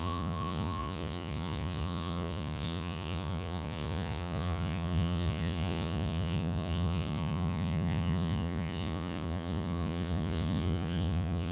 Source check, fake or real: fake